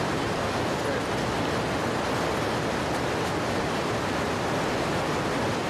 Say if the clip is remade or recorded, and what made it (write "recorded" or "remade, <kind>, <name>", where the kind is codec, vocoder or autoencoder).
recorded